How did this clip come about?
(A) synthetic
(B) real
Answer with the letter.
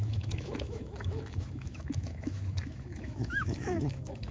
A